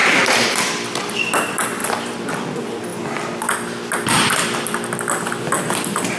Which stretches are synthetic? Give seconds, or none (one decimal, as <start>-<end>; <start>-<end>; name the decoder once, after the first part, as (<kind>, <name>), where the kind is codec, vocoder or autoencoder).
0.0-0.7 (vocoder, BigVGAN v2); 1.8-2.3